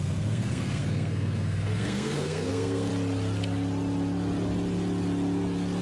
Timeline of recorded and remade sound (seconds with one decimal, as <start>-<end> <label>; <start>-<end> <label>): 0.0-2.9 remade; 2.9-5.8 recorded